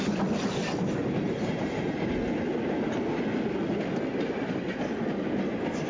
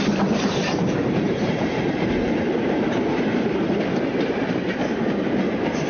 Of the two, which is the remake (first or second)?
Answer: second